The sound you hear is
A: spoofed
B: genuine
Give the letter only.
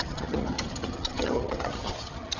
A